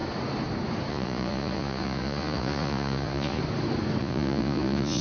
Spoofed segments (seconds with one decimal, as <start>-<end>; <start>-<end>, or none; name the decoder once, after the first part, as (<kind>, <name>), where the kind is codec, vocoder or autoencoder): 0.9-3.4 (vocoder, Vocos); 4.0-5.0